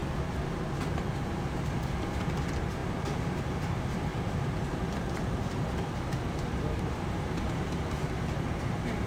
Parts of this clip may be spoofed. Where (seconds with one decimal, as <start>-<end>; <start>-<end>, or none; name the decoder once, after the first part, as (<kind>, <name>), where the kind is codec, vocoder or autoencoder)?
2.8-3.4 (vocoder, BigVGAN v2); 4.1-7.7